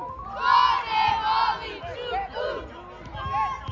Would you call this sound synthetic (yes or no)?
no